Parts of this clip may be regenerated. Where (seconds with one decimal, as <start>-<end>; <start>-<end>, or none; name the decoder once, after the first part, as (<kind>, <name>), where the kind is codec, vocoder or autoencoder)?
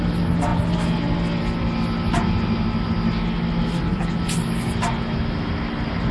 none